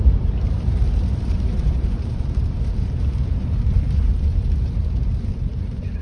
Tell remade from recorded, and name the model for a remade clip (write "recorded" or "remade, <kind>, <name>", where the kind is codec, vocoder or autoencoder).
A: remade, vocoder, BigVGAN v2